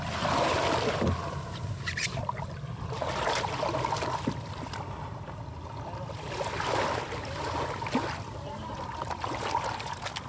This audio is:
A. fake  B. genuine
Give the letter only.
B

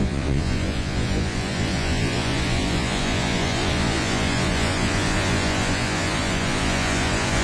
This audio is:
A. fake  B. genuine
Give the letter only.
A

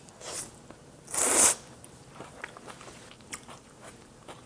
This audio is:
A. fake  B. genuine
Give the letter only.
A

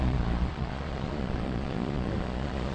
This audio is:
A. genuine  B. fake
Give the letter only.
B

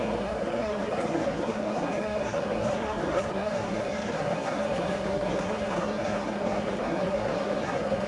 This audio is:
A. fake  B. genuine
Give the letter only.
A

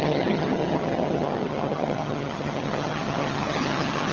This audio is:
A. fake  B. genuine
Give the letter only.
A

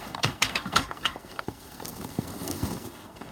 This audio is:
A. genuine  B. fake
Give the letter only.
B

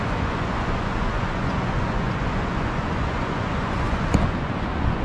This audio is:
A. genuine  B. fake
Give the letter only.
B